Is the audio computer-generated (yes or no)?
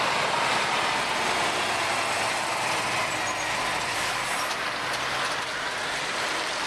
no